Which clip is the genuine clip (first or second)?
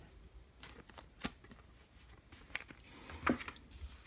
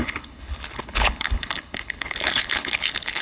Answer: first